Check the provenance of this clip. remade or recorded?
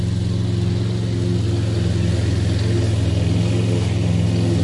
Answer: recorded